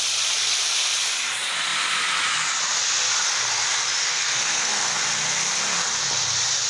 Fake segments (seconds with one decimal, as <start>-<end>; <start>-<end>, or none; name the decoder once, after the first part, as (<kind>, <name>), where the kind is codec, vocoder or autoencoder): 4.0-5.0 (codec, SNAC)